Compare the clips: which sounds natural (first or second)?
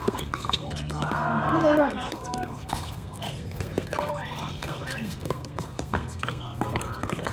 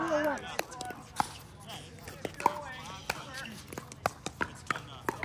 second